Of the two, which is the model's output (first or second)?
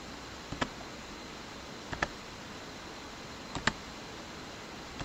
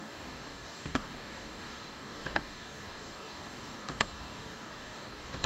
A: second